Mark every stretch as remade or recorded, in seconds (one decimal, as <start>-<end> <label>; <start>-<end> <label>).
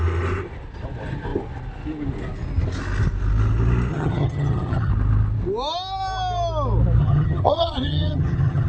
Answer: 0.0-3.9 recorded; 3.9-4.9 remade; 4.9-7.0 recorded; 7.0-8.7 remade